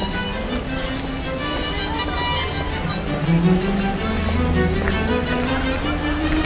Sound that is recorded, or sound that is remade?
recorded